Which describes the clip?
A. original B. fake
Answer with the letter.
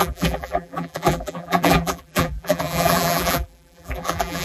B